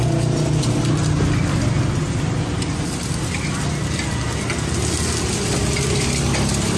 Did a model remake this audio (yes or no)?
no